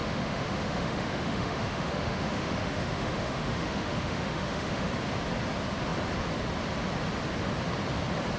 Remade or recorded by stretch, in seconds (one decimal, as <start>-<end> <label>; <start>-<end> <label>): 0.0-4.9 remade; 4.9-8.4 recorded